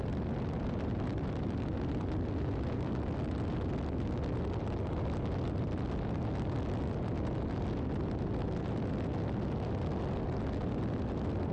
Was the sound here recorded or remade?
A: recorded